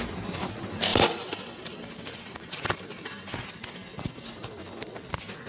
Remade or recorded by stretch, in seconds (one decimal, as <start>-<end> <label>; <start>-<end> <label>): 0.0-0.9 recorded; 0.9-3.3 remade; 3.3-5.5 recorded